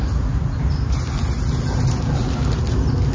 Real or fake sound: real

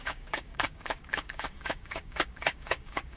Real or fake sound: fake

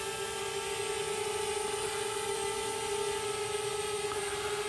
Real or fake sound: real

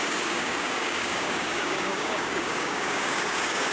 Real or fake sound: fake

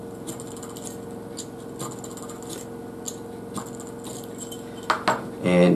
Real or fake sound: real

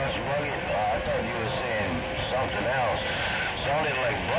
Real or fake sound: real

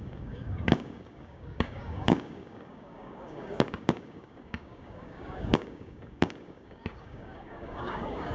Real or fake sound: fake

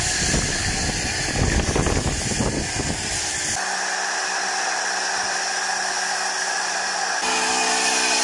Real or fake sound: real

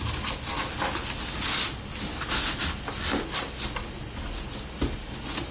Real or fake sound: real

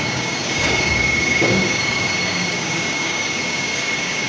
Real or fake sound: fake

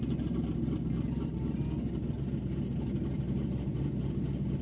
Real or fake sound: real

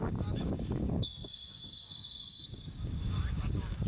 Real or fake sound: fake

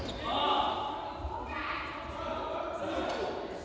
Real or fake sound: real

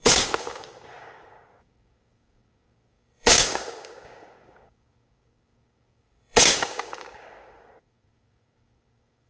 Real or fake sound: fake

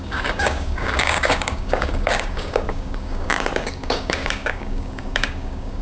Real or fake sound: fake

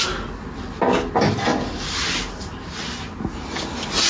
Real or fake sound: real